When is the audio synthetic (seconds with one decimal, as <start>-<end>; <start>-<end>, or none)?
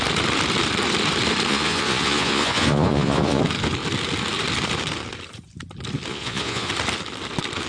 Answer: 1.5-3.4; 6.1-6.7